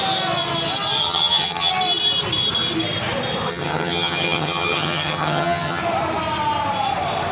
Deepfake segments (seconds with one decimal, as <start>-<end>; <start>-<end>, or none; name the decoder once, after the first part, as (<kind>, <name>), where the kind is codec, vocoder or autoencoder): 1.0-1.7 (vocoder, HiFi-GAN); 3.5-5.8